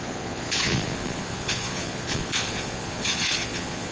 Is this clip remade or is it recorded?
remade